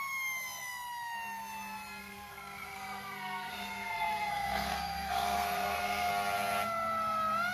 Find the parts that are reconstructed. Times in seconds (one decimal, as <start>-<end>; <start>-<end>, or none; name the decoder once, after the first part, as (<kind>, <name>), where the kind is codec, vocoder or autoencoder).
2.0-6.1 (codec, SNAC)

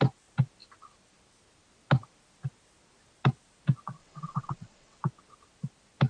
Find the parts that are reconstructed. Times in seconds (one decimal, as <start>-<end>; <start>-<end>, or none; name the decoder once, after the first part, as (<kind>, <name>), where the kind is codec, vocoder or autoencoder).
4.0-5.0 (vocoder, WaveNeXt)